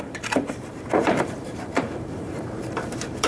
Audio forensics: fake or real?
fake